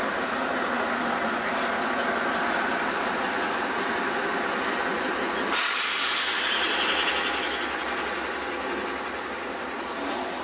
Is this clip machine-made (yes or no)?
no